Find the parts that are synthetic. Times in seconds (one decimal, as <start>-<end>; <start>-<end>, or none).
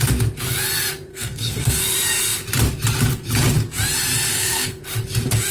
1.1-1.7; 4.3-4.8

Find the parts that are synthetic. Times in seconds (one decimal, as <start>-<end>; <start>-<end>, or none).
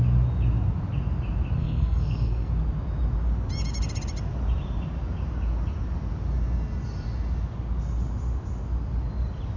1.6-2.5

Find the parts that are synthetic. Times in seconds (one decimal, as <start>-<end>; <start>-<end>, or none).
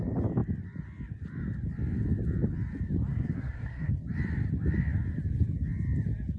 3.1-3.9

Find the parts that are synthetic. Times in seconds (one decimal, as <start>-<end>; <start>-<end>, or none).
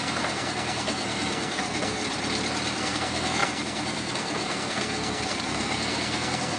0.0-2.0; 2.8-6.6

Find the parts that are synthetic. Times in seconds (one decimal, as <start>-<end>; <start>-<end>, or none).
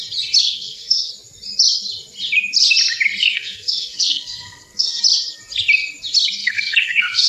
0.4-1.1; 3.2-5.0; 6.4-7.3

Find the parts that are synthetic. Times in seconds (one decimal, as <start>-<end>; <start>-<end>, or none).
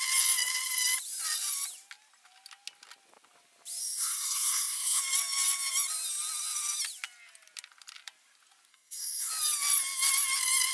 3.8-5.0; 8.7-9.3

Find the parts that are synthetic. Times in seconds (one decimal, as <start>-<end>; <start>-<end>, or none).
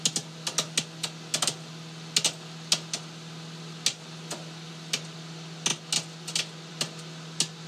none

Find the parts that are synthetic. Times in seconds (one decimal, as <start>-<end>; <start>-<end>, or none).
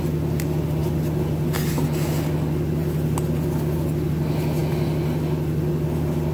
none